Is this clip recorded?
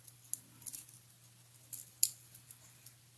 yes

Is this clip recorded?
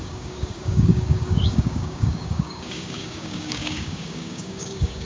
no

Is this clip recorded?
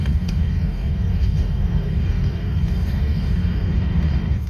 no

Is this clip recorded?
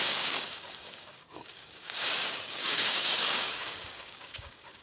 no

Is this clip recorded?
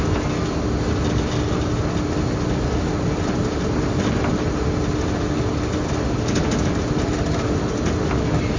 yes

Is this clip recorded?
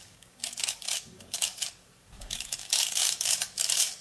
no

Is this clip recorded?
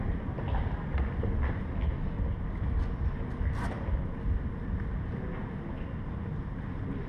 yes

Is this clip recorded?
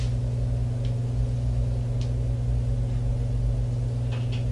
yes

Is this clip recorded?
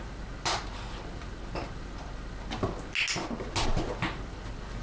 yes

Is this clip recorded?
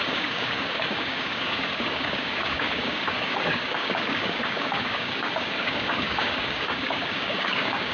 no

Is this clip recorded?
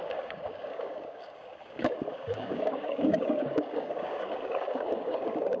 no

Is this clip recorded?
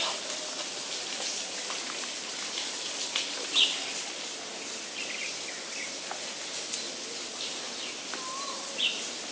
yes